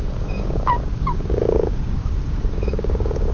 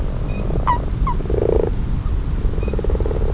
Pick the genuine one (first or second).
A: second